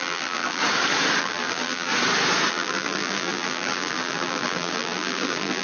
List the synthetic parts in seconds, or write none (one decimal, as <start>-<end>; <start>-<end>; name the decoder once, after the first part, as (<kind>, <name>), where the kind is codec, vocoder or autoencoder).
0.0-0.6 (vocoder, BigVGAN v2); 1.2-1.9; 2.5-5.6